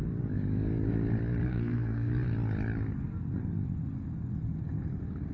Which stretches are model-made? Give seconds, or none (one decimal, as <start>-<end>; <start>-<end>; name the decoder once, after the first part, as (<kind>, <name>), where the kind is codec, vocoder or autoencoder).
1.5-2.1 (codec, SNAC)